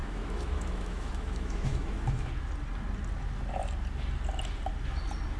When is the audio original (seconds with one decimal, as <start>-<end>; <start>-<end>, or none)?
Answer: 2.3-5.4